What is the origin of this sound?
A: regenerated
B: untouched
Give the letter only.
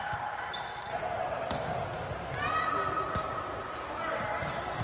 B